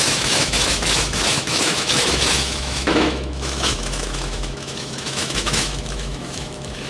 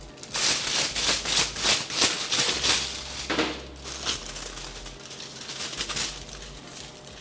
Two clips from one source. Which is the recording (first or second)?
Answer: second